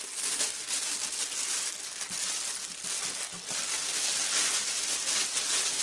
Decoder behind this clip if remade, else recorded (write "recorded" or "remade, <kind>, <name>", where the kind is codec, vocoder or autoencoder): recorded